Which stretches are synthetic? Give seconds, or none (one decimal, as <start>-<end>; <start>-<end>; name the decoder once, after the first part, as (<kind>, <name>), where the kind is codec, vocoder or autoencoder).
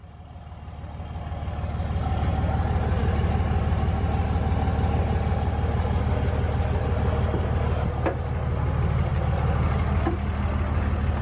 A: none